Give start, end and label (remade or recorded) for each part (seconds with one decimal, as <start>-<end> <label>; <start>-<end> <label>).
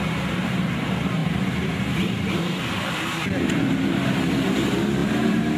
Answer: 0.0-1.2 recorded; 1.2-2.8 remade; 2.8-5.0 recorded; 5.0-5.6 remade